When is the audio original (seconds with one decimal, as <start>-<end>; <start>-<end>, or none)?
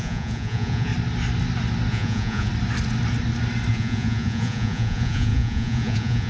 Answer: 0.9-1.9; 2.5-3.7